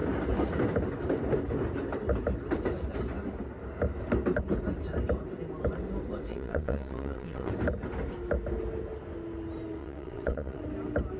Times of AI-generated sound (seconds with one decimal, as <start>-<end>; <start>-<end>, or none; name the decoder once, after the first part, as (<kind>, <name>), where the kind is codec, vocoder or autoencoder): 6.3-7.5 (vocoder, WaveNeXt); 9.8-10.6